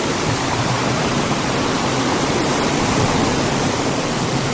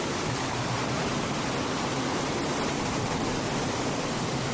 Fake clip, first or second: first